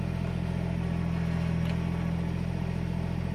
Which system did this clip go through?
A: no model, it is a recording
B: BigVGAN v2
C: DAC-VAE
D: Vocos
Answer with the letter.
A